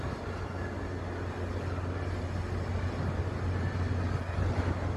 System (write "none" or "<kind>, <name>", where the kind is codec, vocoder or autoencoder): none